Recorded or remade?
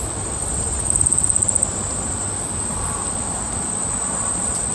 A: recorded